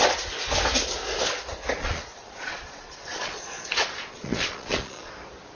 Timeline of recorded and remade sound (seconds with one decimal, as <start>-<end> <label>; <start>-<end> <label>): 0.0-1.8 recorded; 1.8-5.1 remade; 5.1-5.5 recorded